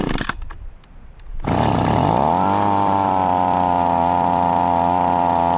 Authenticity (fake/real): fake